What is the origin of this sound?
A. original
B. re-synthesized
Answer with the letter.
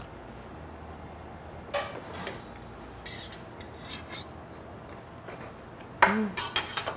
A